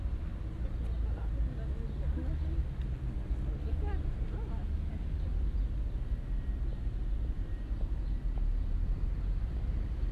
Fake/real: real